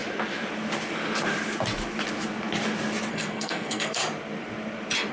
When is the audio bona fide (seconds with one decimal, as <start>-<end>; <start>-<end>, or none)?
0.0-3.1; 4.0-5.1